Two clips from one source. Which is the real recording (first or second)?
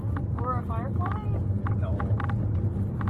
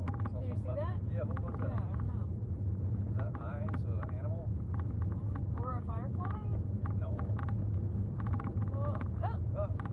first